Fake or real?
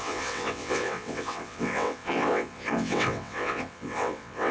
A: fake